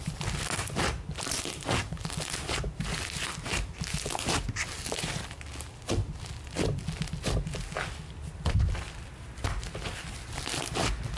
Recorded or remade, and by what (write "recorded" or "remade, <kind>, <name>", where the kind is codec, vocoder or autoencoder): recorded